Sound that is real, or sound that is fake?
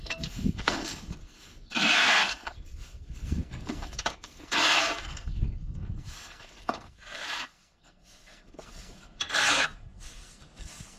fake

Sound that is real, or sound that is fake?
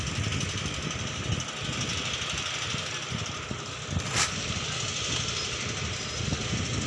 real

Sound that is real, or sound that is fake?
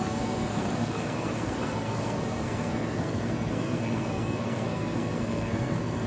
fake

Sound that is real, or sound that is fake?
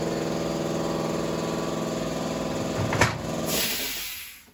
real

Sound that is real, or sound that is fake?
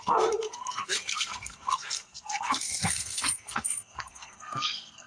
fake